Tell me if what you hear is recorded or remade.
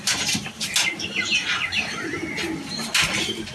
recorded